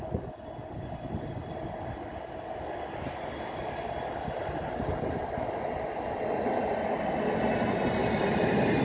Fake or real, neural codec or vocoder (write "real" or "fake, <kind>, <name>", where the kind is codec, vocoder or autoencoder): real